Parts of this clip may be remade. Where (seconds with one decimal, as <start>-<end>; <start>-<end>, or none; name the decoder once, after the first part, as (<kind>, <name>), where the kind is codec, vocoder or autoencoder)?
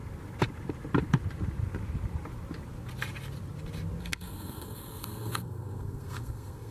4.0-6.7 (codec, SNAC)